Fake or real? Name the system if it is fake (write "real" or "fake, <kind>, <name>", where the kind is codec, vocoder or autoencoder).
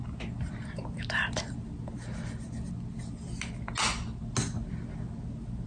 real